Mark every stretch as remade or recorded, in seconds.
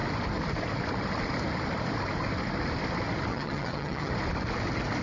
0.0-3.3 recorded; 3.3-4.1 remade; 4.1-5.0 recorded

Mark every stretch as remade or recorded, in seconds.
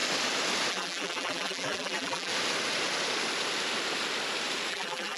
0.0-0.7 recorded; 0.7-2.3 remade; 2.3-4.7 recorded; 4.7-5.2 remade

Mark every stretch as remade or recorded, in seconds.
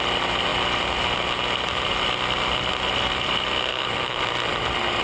0.0-3.7 recorded; 3.7-4.2 remade; 4.2-5.0 recorded